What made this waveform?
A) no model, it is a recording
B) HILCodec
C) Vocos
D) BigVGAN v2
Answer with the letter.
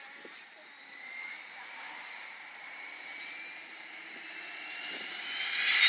D